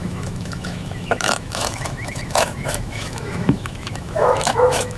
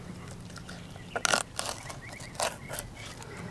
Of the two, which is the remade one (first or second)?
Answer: first